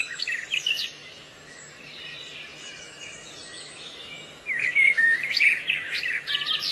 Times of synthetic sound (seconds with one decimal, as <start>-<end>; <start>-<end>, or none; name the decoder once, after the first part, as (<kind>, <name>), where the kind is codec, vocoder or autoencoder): 0.0-1.6 (autoencoder, DAC-VAE); 2.5-6.3

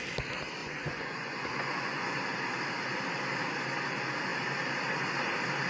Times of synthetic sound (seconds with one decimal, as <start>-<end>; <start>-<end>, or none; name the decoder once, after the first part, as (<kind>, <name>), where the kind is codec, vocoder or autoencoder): 0.6-2.2 (vocoder, Vocos)

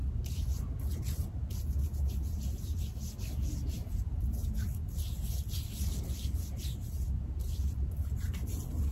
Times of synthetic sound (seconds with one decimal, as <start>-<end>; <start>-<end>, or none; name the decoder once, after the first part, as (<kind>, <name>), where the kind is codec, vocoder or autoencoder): none

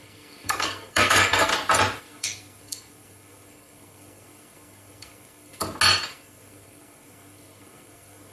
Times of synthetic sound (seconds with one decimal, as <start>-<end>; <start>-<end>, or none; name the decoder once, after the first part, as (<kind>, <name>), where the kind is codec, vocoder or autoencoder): 0.0-1.5 (codec, SNAC); 2.0-5.6; 6.1-8.3

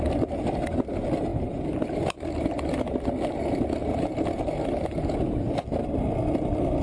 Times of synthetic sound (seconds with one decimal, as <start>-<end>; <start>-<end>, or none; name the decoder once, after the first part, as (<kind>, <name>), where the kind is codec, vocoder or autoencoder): none

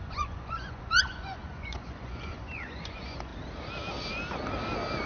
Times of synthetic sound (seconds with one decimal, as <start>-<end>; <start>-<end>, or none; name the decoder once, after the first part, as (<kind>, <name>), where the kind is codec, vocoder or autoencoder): 0.0-3.3 (vocoder, Vocos)

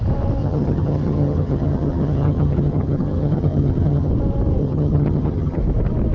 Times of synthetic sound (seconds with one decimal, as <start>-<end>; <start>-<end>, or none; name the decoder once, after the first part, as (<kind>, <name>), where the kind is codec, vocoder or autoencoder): 0.4-4.1 (vocoder, HiFi-GAN); 4.6-5.6